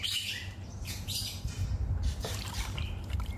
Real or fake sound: fake